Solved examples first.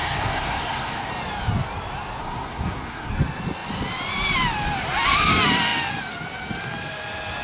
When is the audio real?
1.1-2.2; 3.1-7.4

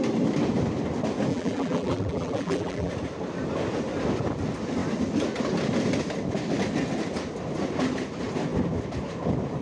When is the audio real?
0.0-1.3; 2.9-9.6